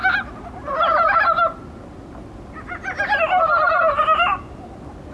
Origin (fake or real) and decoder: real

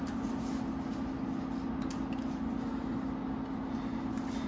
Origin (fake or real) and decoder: real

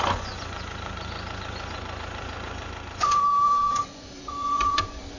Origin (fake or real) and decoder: fake, vocoder, Vocos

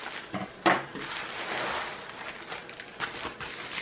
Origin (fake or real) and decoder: real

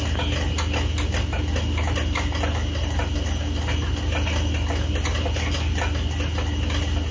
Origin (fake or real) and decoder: real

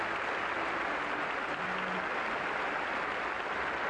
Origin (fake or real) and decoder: real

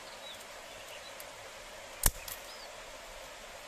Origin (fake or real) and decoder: real